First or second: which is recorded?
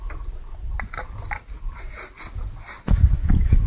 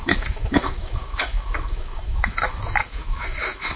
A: first